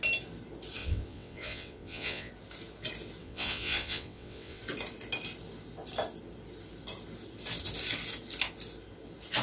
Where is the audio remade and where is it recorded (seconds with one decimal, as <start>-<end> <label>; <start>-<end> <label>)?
0.0-0.8 recorded; 0.8-2.3 remade; 2.3-3.2 recorded; 3.2-4.6 remade; 4.6-9.4 recorded